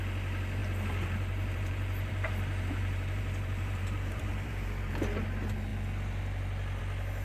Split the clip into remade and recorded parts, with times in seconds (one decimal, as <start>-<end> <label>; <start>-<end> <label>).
0.0-0.6 recorded; 0.6-4.9 remade; 4.9-7.2 recorded